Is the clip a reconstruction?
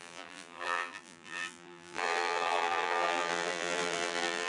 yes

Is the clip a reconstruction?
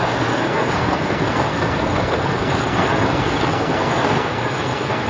yes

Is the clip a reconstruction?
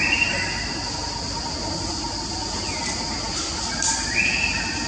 no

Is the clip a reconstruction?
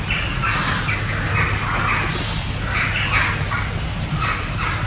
no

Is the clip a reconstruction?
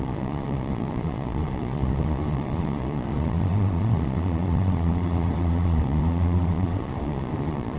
yes